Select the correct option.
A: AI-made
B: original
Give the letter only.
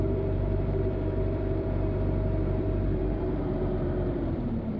A